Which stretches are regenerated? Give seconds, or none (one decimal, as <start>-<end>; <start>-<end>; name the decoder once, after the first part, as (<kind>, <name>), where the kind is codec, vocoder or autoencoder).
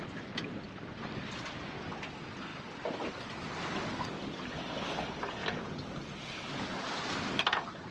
none